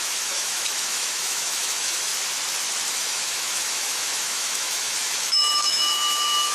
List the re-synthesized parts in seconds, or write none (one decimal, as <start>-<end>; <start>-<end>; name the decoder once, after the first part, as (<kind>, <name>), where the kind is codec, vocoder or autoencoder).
0.0-2.1 (autoencoder, DAC-VAE); 2.9-6.5

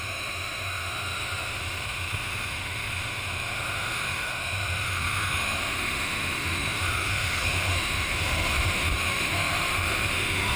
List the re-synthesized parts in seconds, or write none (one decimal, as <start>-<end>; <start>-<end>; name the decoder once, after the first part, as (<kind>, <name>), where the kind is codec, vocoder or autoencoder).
0.0-10.6 (autoencoder, DAC-VAE)

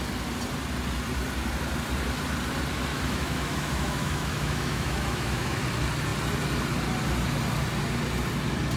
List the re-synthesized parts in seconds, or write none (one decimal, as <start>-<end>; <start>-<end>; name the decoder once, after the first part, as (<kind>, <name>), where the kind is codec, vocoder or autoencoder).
2.9-5.6 (autoencoder, DAC-VAE)